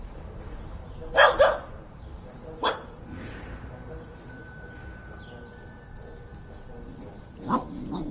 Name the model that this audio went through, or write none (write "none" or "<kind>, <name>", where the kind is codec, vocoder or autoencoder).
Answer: vocoder, BigVGAN v2